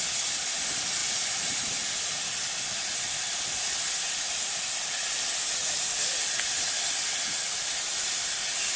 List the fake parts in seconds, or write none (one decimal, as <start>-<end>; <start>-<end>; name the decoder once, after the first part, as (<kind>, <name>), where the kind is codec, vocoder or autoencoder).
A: none